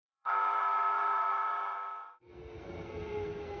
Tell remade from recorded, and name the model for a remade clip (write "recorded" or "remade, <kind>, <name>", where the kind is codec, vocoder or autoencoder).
remade, codec, SNAC